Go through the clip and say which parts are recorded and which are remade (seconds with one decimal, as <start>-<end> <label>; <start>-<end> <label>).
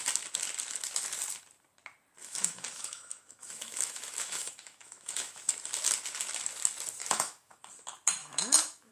0.0-2.2 recorded; 2.2-5.5 remade; 5.5-7.0 recorded; 7.0-7.6 remade; 7.6-8.2 recorded; 8.2-8.9 remade